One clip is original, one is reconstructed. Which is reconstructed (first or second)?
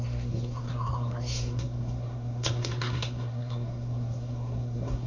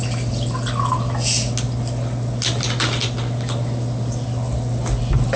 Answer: first